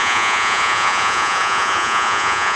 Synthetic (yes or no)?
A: yes